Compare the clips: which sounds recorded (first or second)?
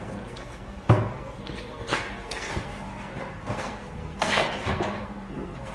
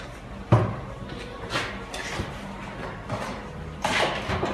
second